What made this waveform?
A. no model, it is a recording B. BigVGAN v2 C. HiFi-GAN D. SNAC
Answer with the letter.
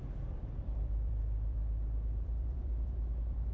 B